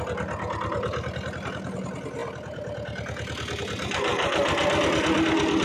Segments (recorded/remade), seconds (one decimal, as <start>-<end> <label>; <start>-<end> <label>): 0.0-5.6 recorded